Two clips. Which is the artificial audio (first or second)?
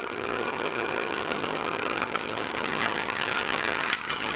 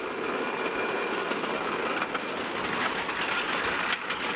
first